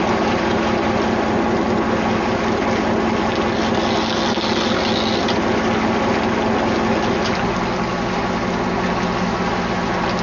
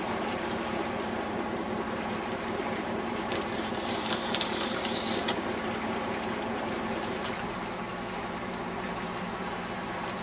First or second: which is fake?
second